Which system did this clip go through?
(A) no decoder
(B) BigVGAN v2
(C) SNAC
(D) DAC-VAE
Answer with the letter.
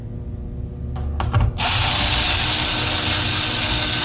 A